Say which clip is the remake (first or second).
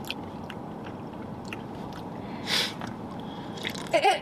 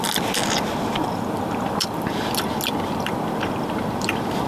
first